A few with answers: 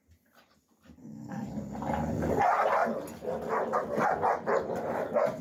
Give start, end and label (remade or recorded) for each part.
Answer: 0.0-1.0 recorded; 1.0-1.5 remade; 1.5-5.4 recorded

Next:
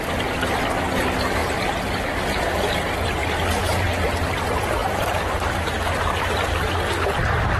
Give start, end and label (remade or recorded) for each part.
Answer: 0.0-3.2 recorded; 3.2-3.9 remade; 3.9-4.8 recorded; 4.8-5.7 remade; 5.7-7.6 recorded